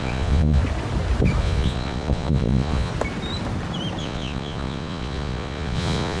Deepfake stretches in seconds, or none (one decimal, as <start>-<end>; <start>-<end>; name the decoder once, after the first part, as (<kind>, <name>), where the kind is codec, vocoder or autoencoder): 0.0-0.6 (vocoder, Vocos); 1.4-2.9; 4.0-6.2